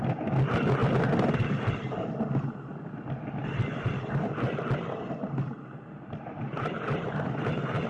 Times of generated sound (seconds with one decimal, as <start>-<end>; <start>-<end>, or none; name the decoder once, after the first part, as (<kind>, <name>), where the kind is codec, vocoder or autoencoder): none